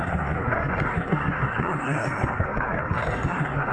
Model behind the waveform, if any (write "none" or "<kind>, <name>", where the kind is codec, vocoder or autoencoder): codec, SNAC